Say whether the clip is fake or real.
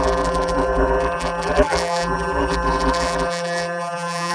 fake